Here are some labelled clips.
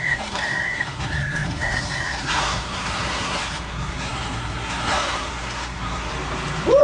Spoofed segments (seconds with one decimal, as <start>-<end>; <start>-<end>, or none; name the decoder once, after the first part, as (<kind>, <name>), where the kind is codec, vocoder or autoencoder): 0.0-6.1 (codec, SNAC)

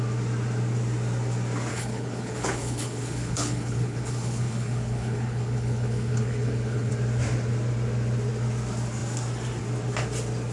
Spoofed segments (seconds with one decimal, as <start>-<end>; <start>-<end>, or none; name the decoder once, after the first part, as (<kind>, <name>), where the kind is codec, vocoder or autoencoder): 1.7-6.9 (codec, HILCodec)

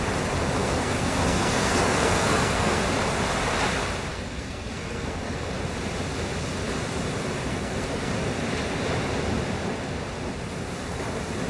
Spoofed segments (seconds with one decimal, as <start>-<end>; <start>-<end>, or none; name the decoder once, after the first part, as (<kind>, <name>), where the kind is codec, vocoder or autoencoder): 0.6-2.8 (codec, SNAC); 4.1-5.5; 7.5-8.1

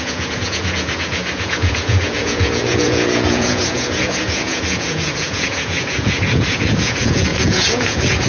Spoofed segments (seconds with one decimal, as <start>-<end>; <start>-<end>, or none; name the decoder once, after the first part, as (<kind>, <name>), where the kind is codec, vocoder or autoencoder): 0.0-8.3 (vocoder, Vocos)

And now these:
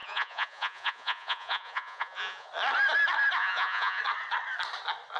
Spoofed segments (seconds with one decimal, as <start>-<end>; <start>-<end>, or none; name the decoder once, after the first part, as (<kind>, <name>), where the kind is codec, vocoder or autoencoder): 0.0-2.5 (vocoder, Vocos); 3.4-4.0

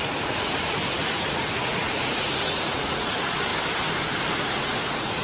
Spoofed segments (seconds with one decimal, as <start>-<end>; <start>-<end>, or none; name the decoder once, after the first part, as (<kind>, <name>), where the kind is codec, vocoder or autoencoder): 0.0-3.5 (vocoder, Vocos); 4.4-5.2

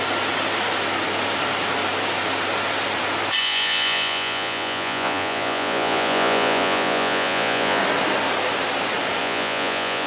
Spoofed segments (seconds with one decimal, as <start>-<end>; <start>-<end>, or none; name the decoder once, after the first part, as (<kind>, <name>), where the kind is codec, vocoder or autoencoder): 3.4-7.8 (vocoder, Vocos); 9.2-10.1